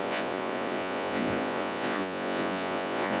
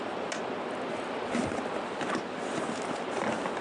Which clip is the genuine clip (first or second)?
second